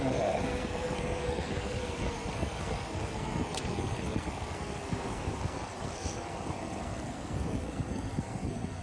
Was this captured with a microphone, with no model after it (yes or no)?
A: no